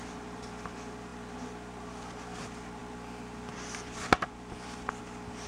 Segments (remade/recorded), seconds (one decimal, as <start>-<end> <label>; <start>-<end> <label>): 0.0-5.5 recorded